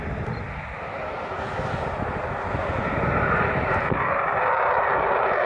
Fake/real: real